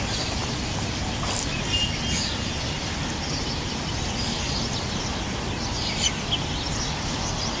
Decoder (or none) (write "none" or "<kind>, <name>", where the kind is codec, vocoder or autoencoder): none